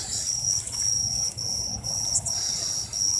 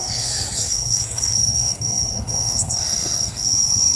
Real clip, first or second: first